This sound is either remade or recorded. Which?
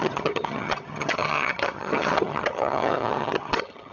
remade